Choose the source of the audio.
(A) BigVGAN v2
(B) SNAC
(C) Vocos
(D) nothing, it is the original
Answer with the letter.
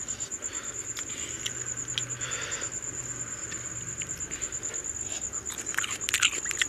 D